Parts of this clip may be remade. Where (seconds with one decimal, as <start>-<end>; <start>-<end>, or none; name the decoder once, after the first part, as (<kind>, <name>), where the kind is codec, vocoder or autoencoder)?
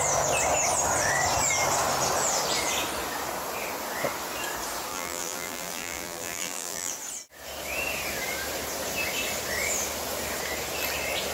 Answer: 4.9-6.9 (vocoder, BigVGAN v2)